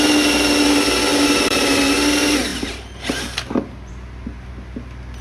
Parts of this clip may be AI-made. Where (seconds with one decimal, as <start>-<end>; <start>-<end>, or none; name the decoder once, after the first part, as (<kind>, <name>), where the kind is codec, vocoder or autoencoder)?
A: 1.1-1.7 (vocoder, BigVGAN v2)